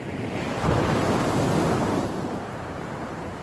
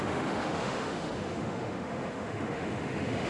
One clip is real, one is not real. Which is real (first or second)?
first